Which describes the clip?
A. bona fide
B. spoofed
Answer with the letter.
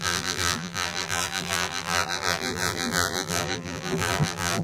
B